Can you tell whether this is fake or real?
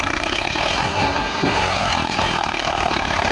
fake